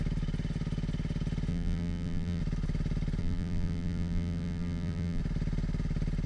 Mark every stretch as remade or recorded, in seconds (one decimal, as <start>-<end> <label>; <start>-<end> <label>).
0.0-1.5 recorded; 1.5-2.4 remade; 2.4-3.2 recorded; 3.2-5.2 remade; 5.2-6.3 recorded